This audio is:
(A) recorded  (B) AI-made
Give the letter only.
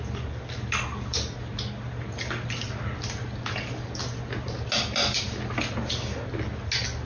A